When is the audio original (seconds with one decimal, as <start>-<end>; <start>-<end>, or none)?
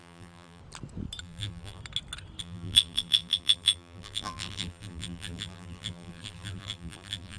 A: 0.6-1.2; 1.8-2.4